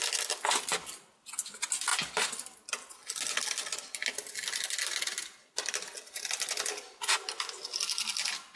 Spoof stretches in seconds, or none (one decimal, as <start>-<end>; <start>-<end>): none